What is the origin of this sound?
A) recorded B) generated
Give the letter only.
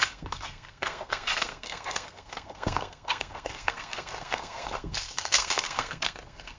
B